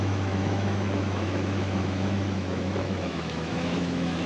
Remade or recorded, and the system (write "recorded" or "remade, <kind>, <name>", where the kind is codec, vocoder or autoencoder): remade, autoencoder, DAC-VAE